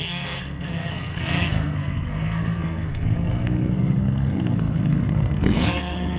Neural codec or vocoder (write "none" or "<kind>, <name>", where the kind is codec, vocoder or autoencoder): codec, SNAC